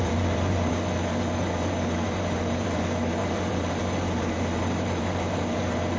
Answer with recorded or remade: remade